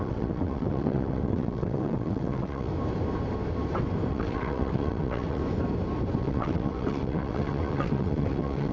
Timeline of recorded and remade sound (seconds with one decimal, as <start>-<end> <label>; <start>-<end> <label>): 0.0-2.7 remade; 2.7-4.1 recorded; 4.1-5.4 remade; 5.4-6.2 recorded; 6.2-8.7 remade